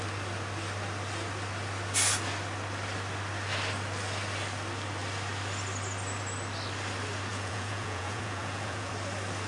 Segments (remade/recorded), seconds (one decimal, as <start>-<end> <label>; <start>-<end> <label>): 0.0-7.3 recorded; 7.3-8.9 remade; 8.9-9.5 recorded